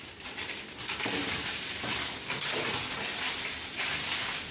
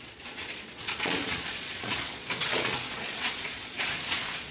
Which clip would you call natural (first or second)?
first